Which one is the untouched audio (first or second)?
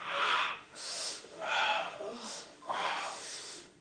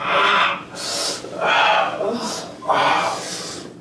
second